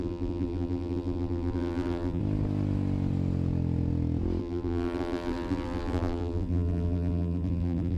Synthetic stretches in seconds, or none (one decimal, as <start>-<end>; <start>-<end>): 0.0-2.2; 4.4-8.0